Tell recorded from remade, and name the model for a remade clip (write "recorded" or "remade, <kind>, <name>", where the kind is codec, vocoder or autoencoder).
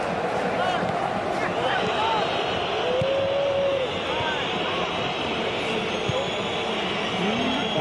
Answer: recorded